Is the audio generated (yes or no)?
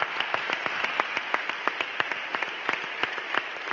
no